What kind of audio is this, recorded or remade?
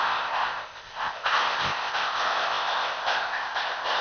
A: remade